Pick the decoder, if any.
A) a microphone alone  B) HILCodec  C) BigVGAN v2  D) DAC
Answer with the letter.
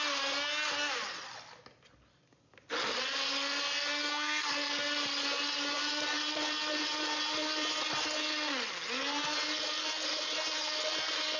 A